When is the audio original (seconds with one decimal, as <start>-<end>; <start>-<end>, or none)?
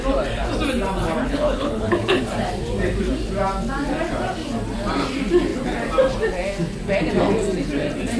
0.0-1.2; 2.2-8.2